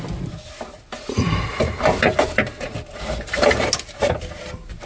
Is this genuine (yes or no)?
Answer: yes